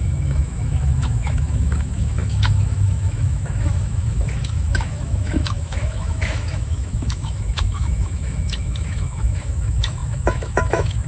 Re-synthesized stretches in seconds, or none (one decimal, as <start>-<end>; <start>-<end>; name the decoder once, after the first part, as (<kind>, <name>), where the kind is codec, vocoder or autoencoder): 0.0-11.1 (autoencoder, DAC-VAE)